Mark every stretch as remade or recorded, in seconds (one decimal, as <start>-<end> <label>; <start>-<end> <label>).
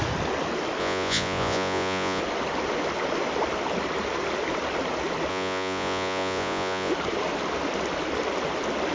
0.0-0.8 recorded; 0.8-2.2 remade; 2.2-5.3 recorded; 5.3-6.9 remade; 6.9-8.9 recorded